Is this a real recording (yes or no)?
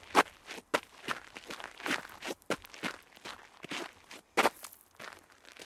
yes